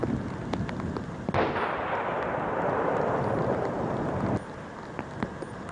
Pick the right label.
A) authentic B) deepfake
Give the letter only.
A